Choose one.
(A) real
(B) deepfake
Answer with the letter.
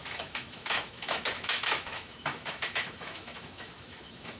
B